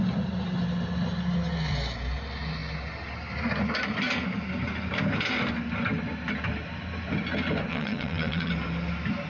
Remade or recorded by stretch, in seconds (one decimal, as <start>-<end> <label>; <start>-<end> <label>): 0.0-7.7 recorded; 7.7-8.5 remade; 8.5-9.3 recorded